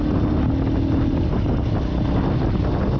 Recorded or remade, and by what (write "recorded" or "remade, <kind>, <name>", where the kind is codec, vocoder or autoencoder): recorded